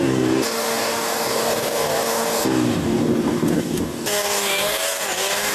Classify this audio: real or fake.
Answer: fake